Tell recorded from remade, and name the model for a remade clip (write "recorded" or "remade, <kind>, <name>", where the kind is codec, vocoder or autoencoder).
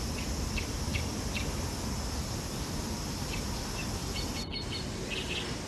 recorded